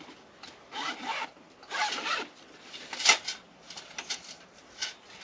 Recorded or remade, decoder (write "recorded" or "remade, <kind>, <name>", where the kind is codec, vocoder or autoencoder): recorded